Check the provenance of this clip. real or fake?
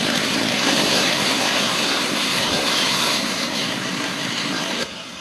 fake